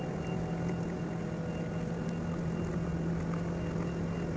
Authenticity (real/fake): real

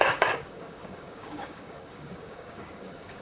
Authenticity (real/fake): fake